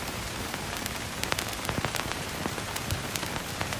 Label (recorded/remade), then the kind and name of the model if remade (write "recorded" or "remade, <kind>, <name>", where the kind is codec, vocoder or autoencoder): remade, vocoder, BigVGAN v2